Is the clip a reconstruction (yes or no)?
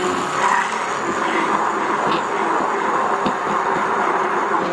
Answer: no